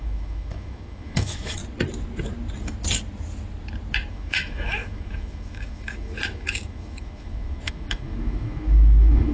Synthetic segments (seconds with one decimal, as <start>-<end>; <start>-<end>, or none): 0.0-1.6; 4.1-9.3